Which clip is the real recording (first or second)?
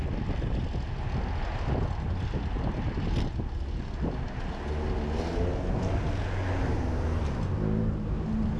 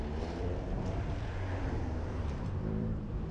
first